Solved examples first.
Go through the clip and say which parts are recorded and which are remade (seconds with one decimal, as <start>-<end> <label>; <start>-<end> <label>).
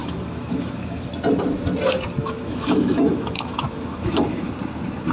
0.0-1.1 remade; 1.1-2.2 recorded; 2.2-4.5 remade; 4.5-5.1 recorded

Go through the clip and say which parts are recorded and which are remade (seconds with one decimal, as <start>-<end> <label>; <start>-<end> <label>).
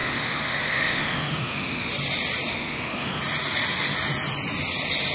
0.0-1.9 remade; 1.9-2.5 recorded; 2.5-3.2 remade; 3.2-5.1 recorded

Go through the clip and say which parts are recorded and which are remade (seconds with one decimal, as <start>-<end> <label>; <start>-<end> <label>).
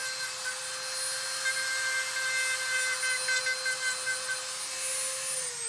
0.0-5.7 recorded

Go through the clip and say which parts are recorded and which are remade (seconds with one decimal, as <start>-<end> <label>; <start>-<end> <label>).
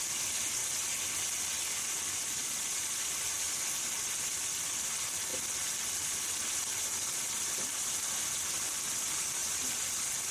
0.0-2.1 recorded; 2.1-2.8 remade; 2.8-10.3 recorded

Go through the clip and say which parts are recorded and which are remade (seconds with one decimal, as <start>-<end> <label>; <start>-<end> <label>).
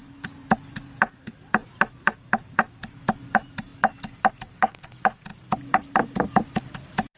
0.0-3.7 remade; 3.7-4.3 recorded; 4.3-7.2 remade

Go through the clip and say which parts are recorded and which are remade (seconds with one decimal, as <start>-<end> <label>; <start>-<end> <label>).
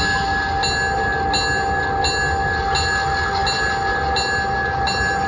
0.0-5.3 recorded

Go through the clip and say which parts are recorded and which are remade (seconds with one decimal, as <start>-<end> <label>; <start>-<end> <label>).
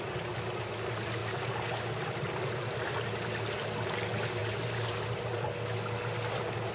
0.0-1.2 recorded; 1.2-2.8 remade; 2.8-4.4 recorded; 4.4-5.5 remade; 5.5-6.7 recorded